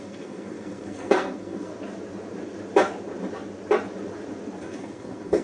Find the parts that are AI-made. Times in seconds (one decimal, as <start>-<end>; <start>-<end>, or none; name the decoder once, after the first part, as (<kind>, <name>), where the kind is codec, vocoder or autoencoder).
0.0-1.7 (codec, SNAC); 4.6-5.4